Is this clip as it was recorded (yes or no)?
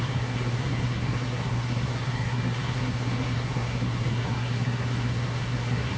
no